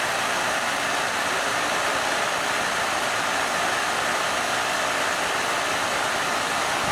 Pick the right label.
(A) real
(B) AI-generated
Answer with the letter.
A